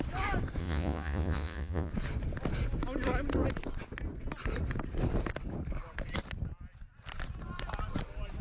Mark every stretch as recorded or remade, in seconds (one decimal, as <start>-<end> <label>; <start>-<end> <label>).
0.0-0.6 recorded; 0.6-1.9 remade; 1.9-8.4 recorded